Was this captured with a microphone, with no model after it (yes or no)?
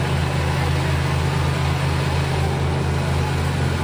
yes